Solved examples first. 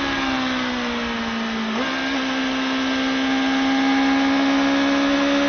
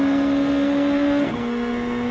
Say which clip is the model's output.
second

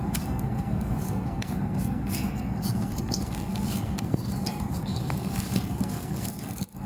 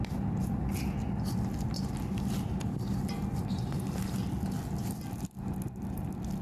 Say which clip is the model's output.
first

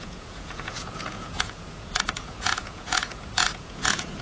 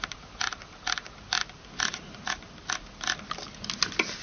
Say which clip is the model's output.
first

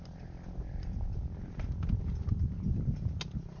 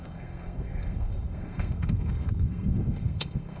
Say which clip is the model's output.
second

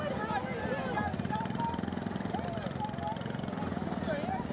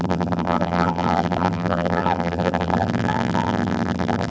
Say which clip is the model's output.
second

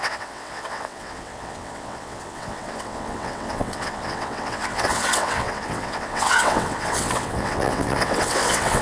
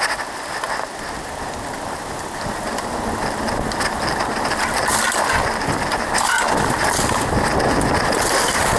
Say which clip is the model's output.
first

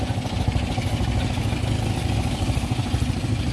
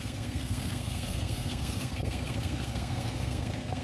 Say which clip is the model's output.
second